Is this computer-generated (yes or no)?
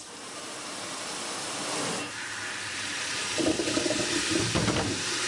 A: yes